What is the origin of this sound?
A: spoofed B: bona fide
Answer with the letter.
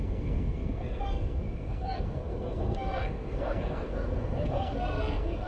A